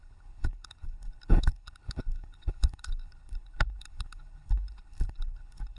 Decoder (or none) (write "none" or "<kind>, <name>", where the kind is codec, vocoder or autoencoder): codec, HILCodec